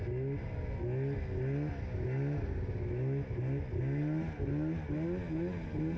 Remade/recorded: recorded